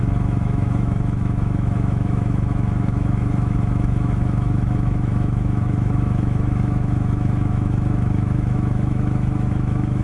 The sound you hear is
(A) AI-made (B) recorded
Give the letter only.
A